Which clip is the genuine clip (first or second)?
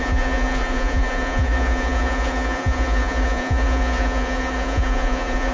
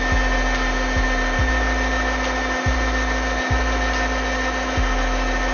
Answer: second